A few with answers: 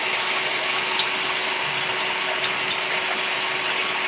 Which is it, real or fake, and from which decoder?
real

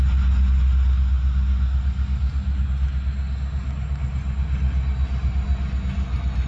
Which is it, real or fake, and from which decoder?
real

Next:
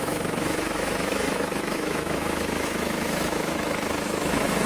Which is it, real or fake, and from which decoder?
fake, autoencoder, DAC-VAE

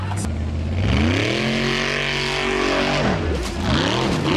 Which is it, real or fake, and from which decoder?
real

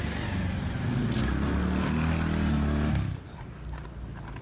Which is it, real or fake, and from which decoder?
real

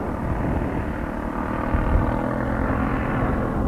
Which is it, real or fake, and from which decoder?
real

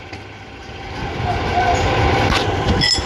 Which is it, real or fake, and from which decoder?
real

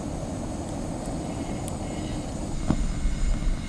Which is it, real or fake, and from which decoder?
real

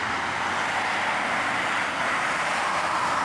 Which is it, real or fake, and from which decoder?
real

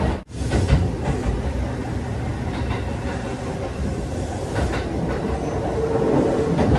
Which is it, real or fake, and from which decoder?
real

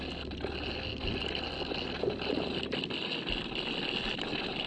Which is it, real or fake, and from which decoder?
real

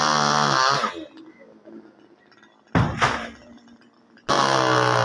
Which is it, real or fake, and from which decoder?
real